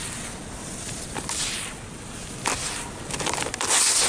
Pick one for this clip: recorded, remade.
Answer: remade